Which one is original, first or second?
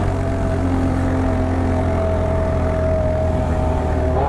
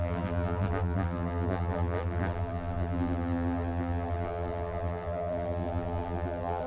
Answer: first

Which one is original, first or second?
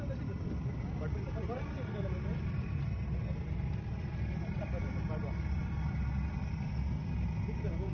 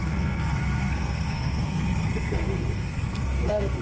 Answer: first